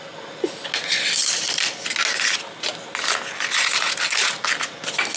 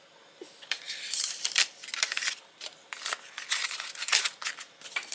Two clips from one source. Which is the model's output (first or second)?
second